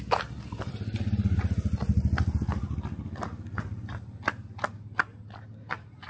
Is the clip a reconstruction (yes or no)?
no